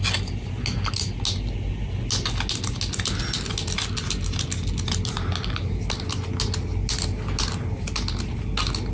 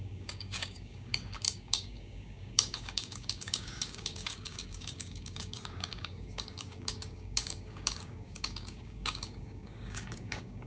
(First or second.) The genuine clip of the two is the first